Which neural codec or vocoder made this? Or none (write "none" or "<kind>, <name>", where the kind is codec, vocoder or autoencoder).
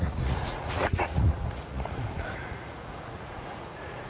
vocoder, Vocos